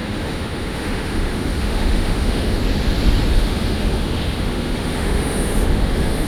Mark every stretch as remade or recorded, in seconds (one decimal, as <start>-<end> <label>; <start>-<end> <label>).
0.0-2.6 remade; 2.6-3.3 recorded; 3.3-6.3 remade